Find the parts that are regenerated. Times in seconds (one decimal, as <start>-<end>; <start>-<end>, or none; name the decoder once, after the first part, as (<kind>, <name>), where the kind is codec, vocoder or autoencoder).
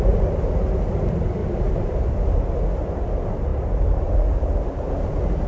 1.4-2.1 (vocoder, BigVGAN v2); 3.5-4.9